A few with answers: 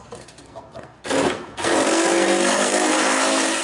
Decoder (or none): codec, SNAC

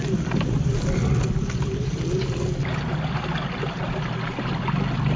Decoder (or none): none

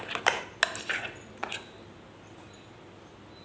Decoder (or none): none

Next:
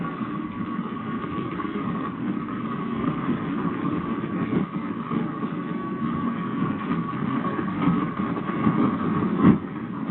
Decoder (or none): codec, SNAC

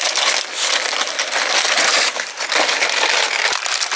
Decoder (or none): none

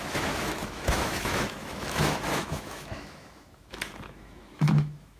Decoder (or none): autoencoder, DAC-VAE